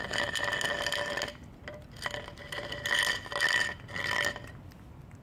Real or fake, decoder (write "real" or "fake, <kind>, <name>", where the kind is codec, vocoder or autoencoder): real